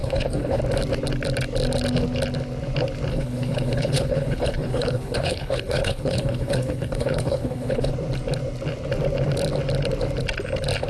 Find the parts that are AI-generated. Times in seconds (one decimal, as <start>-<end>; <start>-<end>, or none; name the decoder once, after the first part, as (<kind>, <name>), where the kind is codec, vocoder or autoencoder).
0.0-0.6 (codec, HILCodec); 3.1-7.9